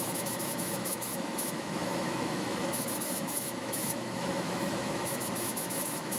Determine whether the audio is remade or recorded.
remade